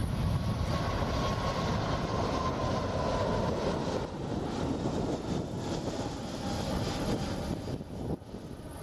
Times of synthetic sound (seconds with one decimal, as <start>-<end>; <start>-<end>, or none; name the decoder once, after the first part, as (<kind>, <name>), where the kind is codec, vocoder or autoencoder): none